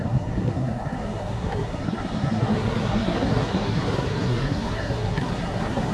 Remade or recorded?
remade